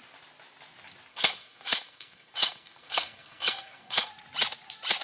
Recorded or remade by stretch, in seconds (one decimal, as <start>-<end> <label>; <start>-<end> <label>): 0.0-1.1 recorded; 1.1-4.1 remade; 4.1-5.0 recorded